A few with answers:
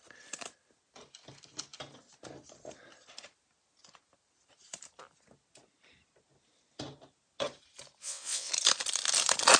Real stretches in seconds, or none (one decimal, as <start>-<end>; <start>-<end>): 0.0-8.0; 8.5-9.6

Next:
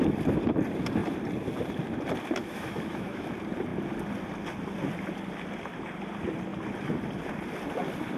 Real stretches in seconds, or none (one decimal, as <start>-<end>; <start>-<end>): 0.0-2.4; 3.3-8.2

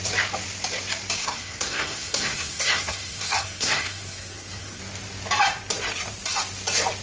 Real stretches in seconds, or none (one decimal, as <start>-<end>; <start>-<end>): 0.0-1.2; 4.8-7.0